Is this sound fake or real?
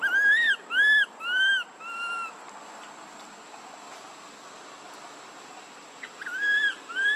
real